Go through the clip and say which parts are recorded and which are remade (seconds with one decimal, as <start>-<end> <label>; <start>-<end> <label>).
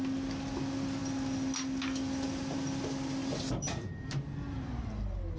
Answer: 0.0-5.4 recorded